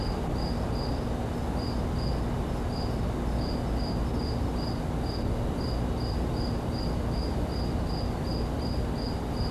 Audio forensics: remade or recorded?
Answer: recorded